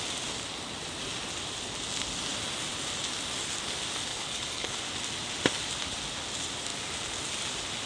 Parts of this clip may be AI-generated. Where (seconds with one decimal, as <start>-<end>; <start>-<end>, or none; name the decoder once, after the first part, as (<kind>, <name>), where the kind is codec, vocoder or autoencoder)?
4.1-4.8 (codec, HILCodec)